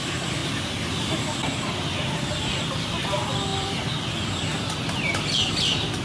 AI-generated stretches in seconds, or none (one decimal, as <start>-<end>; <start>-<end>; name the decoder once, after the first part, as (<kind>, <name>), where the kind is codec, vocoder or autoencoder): 3.5-4.1 (vocoder, BigVGAN v2)